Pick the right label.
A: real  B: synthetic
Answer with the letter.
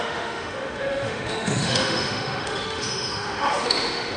B